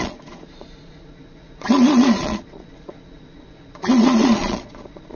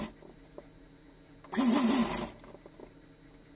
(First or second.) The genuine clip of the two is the second